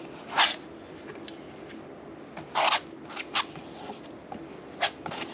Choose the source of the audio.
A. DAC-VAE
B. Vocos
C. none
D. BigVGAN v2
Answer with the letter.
C